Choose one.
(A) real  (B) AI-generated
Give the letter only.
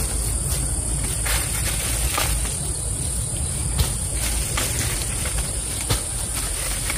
A